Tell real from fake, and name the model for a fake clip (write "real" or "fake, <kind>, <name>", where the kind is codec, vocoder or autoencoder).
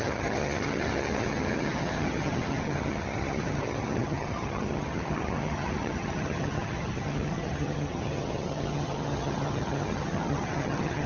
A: fake, vocoder, HiFi-GAN